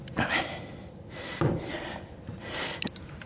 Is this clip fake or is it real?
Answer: real